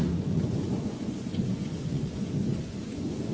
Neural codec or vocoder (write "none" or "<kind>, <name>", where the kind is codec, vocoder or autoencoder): vocoder, Vocos